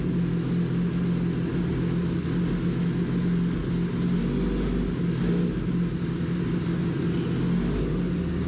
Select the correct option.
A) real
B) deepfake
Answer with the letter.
A